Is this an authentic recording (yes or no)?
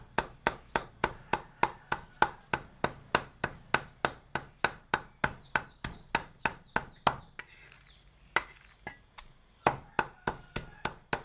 yes